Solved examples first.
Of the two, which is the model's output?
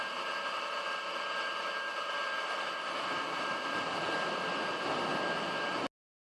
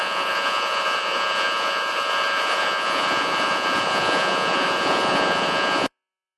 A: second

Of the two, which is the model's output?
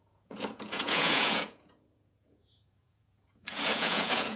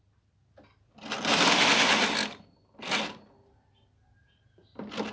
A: first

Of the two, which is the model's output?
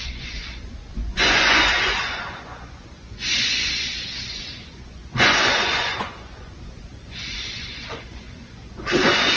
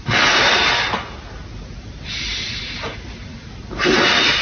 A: first